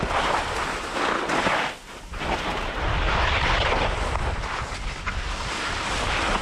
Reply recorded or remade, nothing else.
recorded